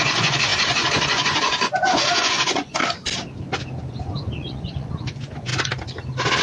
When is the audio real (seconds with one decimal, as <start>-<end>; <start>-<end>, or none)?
2.8-3.8; 5.5-6.4

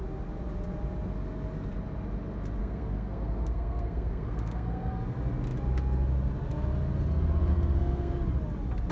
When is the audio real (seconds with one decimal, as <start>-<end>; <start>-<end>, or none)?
0.0-2.6; 4.9-7.5; 8.1-8.9

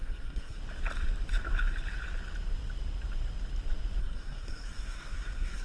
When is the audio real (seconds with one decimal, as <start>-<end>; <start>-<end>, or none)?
0.6-4.0

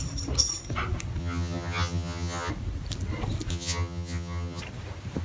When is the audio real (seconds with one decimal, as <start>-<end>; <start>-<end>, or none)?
0.0-1.2; 2.5-3.5; 4.6-5.2